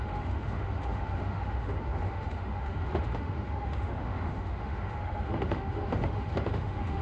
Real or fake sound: fake